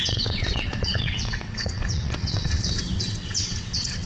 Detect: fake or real fake